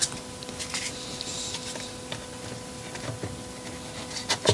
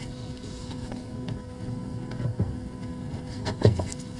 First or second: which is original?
first